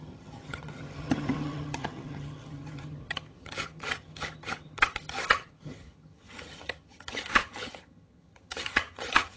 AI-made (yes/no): yes